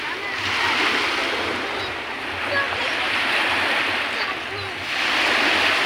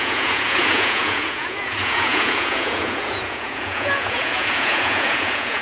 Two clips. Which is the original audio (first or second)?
first